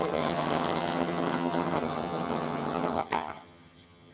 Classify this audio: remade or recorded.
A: remade